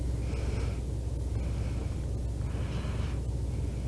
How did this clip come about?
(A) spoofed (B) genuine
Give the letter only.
B